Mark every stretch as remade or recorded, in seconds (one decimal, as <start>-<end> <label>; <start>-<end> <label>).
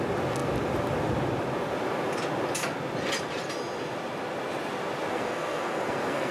0.0-5.1 recorded; 5.1-6.3 remade